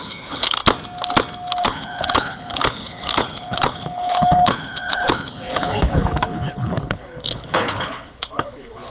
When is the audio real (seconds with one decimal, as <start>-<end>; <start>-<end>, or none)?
0.6-1.6